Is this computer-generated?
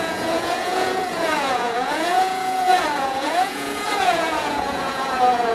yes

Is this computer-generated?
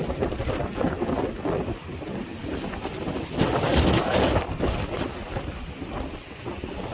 no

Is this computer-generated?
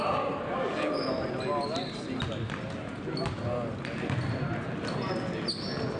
no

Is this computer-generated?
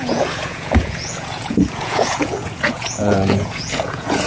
yes